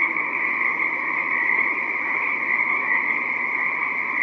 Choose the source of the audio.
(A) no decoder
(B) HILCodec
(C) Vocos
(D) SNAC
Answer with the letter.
A